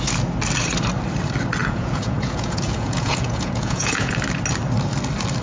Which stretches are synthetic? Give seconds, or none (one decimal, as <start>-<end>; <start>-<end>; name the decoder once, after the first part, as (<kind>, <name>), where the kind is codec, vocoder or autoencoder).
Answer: 1.6-4.1 (vocoder, Vocos)